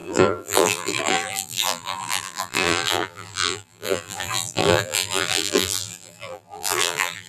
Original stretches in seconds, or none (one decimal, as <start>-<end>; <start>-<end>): none